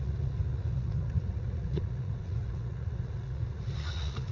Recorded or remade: remade